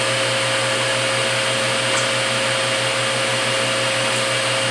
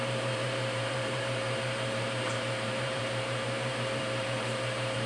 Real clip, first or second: first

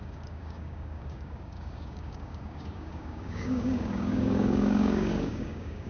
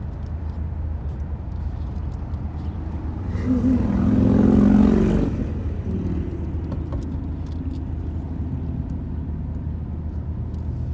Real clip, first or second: second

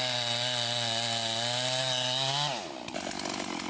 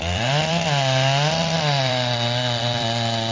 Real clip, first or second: first